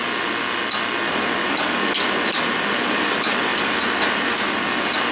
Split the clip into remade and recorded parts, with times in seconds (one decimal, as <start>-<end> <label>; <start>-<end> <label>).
0.0-1.4 recorded; 1.4-1.9 remade; 1.9-5.1 recorded